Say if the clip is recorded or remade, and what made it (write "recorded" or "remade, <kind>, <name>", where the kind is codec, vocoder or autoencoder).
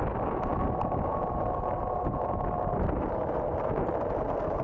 recorded